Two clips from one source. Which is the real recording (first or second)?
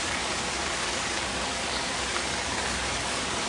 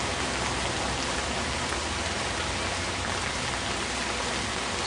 second